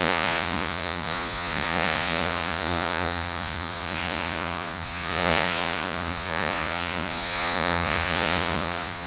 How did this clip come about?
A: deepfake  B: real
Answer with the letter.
A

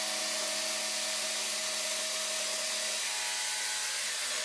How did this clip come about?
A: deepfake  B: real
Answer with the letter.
B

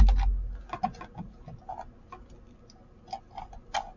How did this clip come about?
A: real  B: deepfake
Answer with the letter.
A